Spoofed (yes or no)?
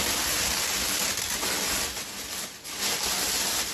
no